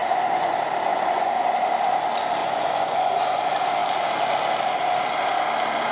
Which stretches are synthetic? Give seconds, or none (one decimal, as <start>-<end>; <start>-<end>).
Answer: 0.0-0.5; 0.9-1.4; 2.4-3.4